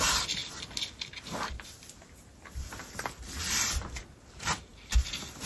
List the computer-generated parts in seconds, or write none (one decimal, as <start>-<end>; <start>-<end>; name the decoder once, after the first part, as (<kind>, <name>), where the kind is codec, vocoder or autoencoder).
none